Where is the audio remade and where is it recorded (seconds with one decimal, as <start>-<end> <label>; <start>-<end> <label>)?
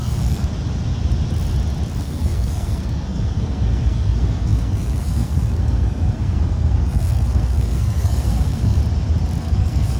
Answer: 0.0-0.5 remade; 0.5-2.0 recorded; 2.0-8.8 remade; 8.8-9.4 recorded; 9.4-10.0 remade